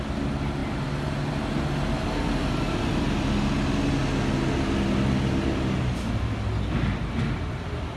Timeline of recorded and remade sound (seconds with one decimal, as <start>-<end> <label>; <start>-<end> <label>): 0.0-8.0 recorded